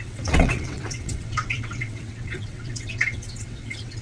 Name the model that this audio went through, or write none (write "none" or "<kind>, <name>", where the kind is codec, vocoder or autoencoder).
vocoder, WaveNeXt